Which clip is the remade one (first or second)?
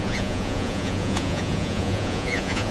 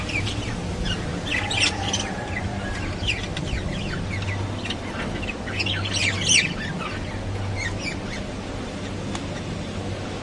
first